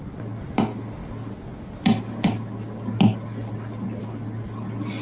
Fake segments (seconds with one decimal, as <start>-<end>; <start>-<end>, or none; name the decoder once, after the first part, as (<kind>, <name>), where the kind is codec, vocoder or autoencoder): none